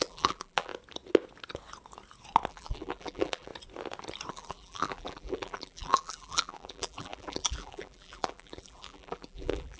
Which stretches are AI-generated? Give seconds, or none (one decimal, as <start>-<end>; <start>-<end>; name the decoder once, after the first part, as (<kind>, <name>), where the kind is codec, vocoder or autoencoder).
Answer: 0.0-0.7 (vocoder, BigVGAN v2); 2.5-3.5; 4.3-9.8